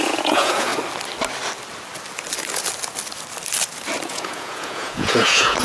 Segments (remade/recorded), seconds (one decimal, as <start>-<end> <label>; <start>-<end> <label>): 0.0-0.7 remade; 0.7-4.1 recorded; 4.1-5.6 remade